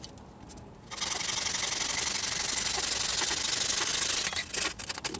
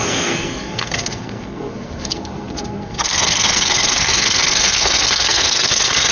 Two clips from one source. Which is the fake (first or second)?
second